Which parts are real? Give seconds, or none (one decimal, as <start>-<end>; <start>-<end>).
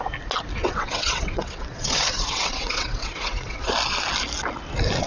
0.0-0.6; 3.7-5.1